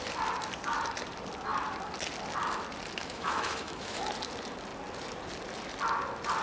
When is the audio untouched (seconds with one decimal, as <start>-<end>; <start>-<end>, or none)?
0.0-3.0; 4.1-6.4